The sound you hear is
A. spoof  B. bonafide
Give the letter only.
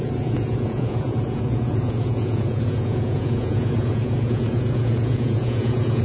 A